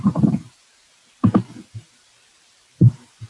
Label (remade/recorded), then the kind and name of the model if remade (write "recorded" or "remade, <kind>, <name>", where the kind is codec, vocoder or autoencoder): remade, vocoder, BigVGAN v2